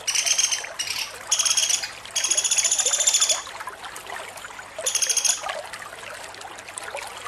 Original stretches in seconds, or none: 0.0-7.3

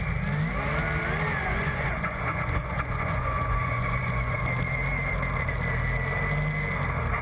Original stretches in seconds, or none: 0.0-1.4; 4.4-7.2

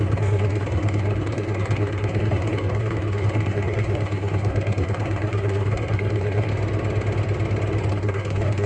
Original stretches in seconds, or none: 6.5-7.9